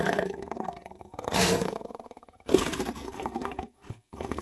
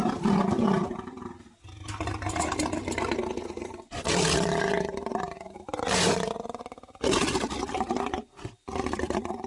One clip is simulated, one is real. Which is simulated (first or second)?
first